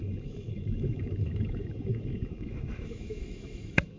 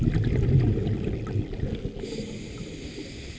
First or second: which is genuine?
second